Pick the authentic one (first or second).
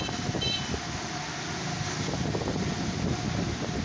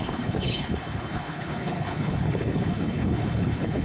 first